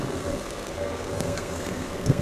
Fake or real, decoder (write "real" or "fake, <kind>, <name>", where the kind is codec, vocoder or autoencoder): fake, codec, SNAC